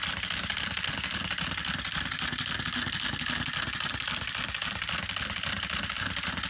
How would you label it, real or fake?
real